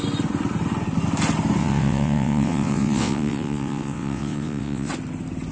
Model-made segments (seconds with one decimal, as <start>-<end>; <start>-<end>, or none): 1.6-4.9